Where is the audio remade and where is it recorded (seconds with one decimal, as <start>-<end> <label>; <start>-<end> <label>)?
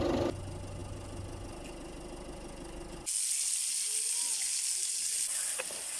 0.0-6.0 recorded